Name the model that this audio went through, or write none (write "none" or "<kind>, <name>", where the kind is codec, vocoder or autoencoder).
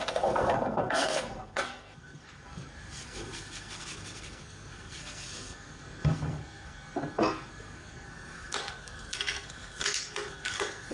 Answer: codec, SNAC